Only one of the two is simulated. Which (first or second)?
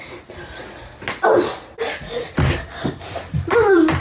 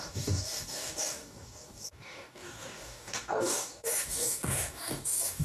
second